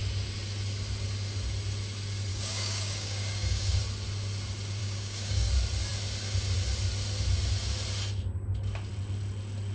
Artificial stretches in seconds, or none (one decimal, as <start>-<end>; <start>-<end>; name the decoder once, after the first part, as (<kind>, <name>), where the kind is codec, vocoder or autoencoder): 2.3-3.8 (codec, DAC); 4.8-5.5